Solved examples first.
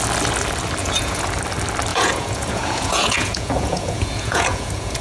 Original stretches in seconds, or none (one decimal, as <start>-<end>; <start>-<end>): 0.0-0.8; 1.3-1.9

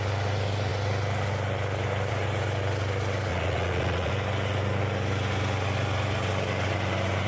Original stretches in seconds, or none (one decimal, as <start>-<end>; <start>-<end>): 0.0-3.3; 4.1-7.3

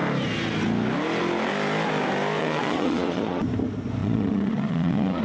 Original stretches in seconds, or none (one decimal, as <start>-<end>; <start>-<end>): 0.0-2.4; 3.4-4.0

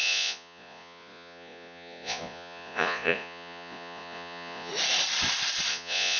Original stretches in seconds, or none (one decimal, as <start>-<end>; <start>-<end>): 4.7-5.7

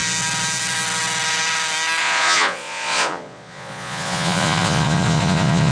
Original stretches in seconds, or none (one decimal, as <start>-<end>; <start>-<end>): 0.0-2.0

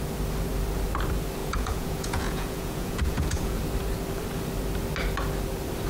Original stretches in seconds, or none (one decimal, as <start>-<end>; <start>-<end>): 0.0-1.4; 3.6-5.9

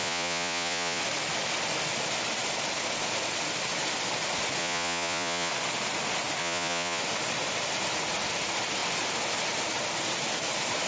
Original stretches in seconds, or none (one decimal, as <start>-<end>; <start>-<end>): 1.0-4.6; 5.5-6.4; 7.0-10.9

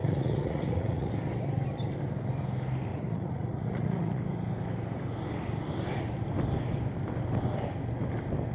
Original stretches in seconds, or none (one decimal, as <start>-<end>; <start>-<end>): 1.1-2.9; 4.2-8.5